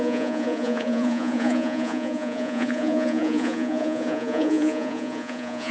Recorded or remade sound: remade